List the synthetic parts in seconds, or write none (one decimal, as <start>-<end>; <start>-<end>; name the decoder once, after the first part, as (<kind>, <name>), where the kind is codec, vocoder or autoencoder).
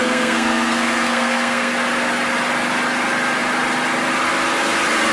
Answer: 0.0-1.7 (codec, SNAC)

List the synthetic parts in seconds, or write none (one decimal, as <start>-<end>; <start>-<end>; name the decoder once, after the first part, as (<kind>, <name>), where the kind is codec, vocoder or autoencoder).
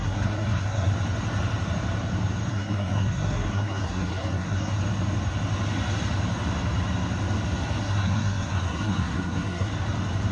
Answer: 0.0-0.9 (codec, SNAC); 2.5-4.8; 7.8-9.7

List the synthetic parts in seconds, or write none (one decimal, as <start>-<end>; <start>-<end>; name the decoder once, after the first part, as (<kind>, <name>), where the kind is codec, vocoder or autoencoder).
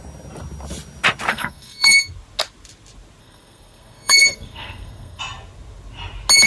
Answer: 1.3-2.0 (codec, SNAC); 3.2-5.2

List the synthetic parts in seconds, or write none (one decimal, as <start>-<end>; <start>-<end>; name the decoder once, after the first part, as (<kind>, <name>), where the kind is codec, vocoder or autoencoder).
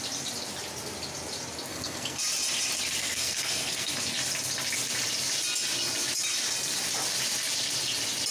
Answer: 1.7-2.2 (codec, SNAC); 3.0-3.9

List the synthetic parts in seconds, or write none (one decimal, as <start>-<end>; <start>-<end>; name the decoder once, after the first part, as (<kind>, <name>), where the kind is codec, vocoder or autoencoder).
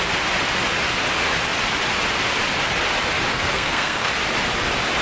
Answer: 3.3-4.1 (codec, SNAC)